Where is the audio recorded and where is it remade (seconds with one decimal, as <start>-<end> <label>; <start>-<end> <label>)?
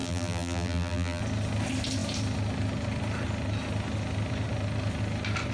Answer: 0.0-1.2 remade; 1.2-5.5 recorded